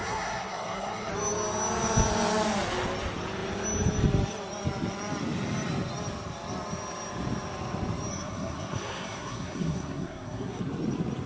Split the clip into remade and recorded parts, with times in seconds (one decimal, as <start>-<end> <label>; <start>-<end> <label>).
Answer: 0.0-1.1 remade; 1.1-8.1 recorded; 8.1-10.6 remade; 10.6-11.3 recorded